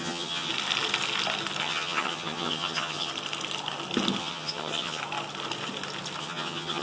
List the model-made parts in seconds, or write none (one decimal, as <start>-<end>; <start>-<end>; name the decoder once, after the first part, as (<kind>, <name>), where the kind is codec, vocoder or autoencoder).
0.0-0.5 (vocoder, HiFi-GAN); 1.6-3.1; 4.2-5.0; 6.2-6.8